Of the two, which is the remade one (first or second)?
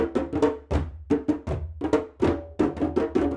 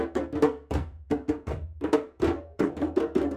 second